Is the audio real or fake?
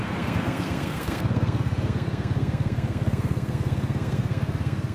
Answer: fake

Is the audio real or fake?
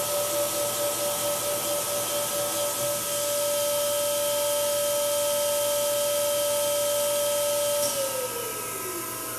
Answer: real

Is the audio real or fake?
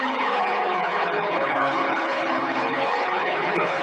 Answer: fake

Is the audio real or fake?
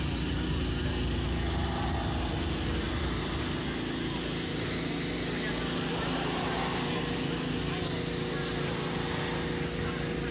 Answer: real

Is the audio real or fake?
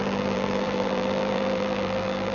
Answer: fake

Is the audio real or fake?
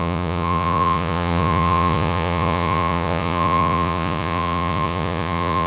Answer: fake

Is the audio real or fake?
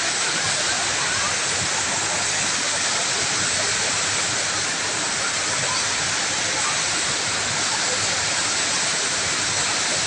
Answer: real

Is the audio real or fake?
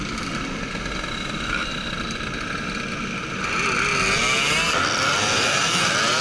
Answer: real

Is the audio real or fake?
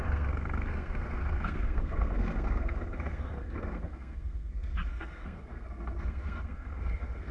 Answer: fake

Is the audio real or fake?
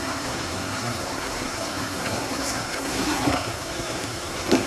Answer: fake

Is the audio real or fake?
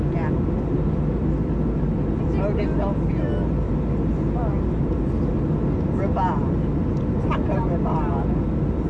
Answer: real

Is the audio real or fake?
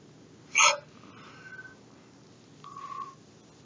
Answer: real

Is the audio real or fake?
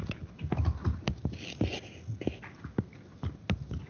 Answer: real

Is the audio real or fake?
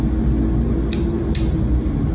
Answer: real